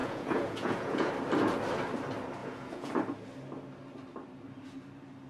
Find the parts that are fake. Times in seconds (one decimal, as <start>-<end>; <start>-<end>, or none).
0.0-1.1; 2.4-2.9